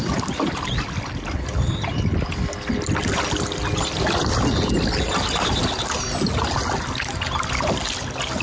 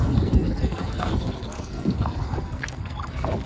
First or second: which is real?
first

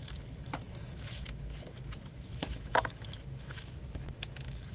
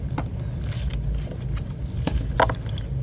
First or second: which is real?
second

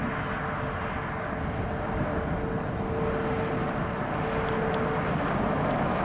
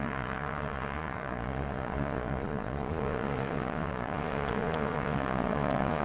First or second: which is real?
first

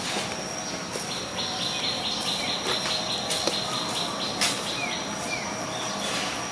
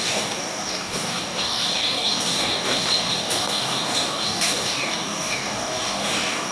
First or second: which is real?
first